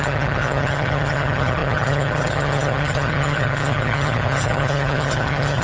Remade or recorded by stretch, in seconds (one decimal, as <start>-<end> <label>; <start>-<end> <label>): 0.0-5.6 remade